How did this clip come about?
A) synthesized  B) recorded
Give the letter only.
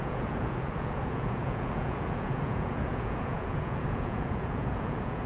A